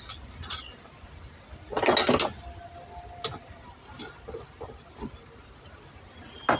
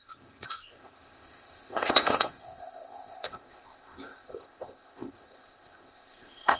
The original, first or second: first